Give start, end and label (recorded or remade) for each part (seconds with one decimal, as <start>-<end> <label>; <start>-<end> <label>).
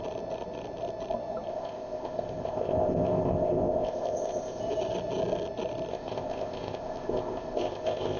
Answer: 0.0-1.5 recorded; 1.5-4.6 remade; 4.6-5.9 recorded; 5.9-8.2 remade